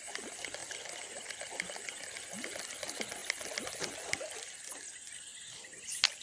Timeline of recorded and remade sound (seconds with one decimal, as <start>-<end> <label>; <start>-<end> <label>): 0.0-6.2 recorded